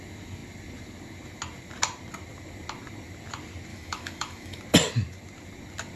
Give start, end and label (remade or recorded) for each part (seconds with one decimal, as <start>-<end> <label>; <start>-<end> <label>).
0.0-3.7 recorded; 3.7-4.6 remade; 4.6-6.0 recorded